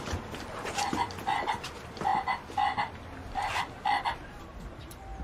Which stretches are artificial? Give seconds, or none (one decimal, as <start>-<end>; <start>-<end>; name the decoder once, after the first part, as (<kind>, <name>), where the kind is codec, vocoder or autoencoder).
0.0-2.1 (vocoder, BigVGAN v2); 4.4-5.2